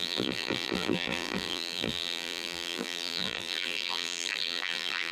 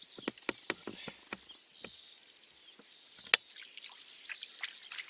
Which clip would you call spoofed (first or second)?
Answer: first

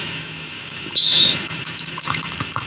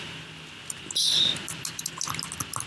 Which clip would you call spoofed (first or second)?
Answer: first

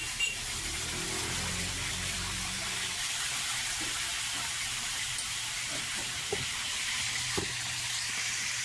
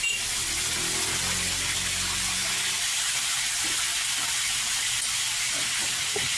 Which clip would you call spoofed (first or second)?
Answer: first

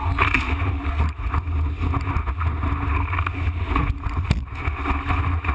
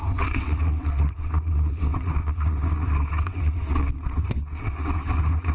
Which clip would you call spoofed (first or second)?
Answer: second